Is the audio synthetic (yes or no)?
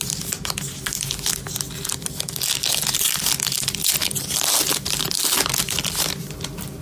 no